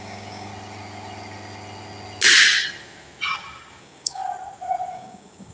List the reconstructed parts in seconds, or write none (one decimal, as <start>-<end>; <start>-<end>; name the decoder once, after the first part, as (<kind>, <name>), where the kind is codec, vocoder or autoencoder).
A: 0.0-0.5 (codec, DAC); 3.8-4.2; 4.9-5.5